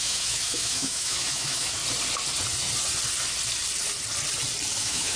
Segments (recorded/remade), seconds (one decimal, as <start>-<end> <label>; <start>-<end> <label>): 0.0-1.8 remade; 1.8-4.8 recorded; 4.8-5.2 remade